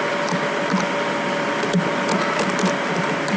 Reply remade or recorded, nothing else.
recorded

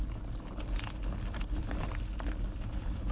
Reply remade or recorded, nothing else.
remade